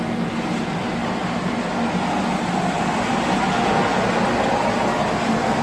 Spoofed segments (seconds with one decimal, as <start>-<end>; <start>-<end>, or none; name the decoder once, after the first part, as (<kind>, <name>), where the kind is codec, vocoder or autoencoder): none